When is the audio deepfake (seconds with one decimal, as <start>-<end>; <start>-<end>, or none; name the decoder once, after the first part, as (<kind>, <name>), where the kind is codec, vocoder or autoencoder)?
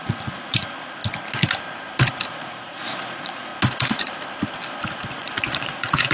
0.0-1.0 (vocoder, Vocos); 2.3-3.5; 5.1-6.1